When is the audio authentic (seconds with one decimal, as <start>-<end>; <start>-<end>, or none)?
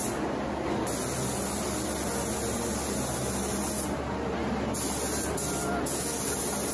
0.0-6.7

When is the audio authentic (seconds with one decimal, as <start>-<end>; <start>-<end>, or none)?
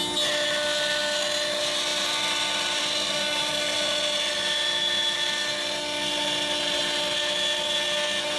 0.0-8.4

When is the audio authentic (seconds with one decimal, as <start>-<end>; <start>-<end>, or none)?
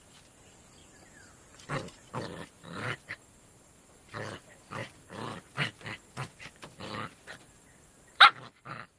0.8-2.2; 4.8-6.6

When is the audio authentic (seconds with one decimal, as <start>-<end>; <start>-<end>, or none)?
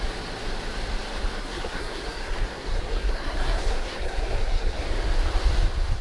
0.0-1.4; 4.8-6.0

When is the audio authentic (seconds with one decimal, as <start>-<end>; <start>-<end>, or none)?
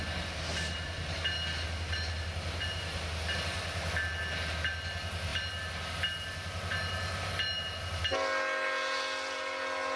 0.0-10.0